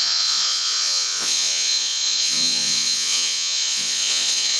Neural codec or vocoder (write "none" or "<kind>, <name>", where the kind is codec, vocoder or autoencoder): vocoder, Vocos